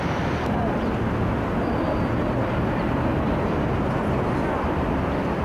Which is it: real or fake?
real